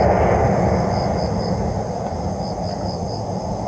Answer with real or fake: real